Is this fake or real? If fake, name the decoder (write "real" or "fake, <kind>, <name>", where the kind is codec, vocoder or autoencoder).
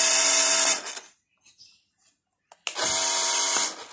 real